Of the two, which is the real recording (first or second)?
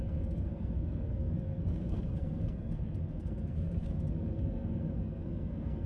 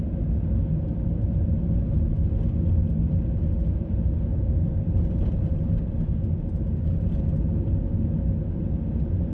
second